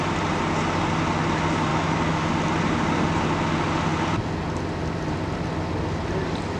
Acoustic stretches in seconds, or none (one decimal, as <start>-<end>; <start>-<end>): 0.0-1.7; 2.3-6.6